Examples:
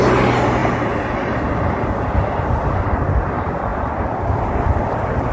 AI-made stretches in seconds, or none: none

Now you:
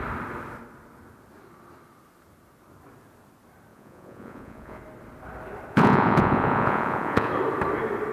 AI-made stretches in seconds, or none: 3.7-4.8; 5.7-7.3

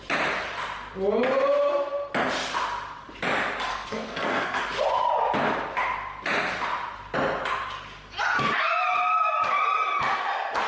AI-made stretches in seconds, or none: 3.7-4.6

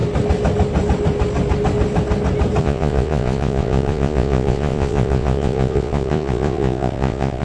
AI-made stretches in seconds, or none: 2.6-7.4

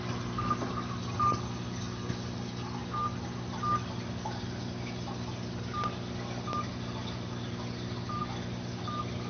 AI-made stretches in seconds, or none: none

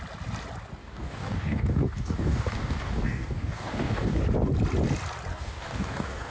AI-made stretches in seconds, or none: 0.8-4.2; 5.3-6.3

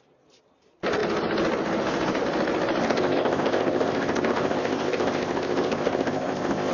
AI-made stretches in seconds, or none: 2.8-6.7

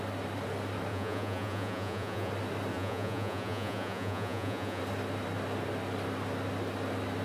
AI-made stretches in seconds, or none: 0.9-2.3; 2.7-4.8